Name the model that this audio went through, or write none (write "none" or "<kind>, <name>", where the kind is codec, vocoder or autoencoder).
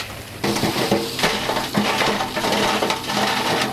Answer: none